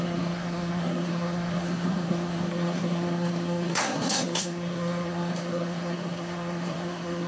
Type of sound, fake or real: fake